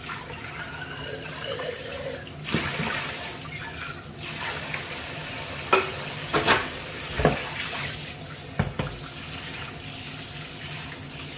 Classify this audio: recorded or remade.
recorded